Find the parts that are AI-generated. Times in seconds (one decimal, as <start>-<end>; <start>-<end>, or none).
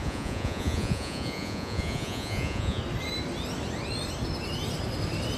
0.0-2.8